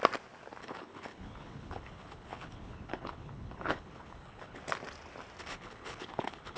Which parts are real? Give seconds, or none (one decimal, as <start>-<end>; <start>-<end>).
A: 0.0-0.6; 4.6-5.4